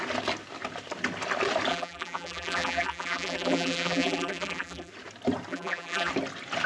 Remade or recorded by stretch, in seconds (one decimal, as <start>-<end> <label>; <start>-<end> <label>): 0.0-1.7 recorded; 1.7-4.9 remade; 4.9-5.5 recorded; 5.5-6.1 remade; 6.1-6.7 recorded